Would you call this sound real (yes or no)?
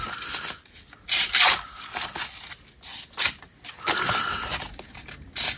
yes